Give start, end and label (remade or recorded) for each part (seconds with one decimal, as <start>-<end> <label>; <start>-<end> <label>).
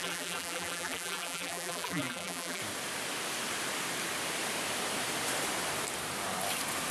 0.0-2.6 remade; 2.6-6.9 recorded